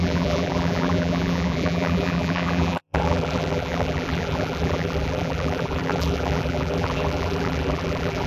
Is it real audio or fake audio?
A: fake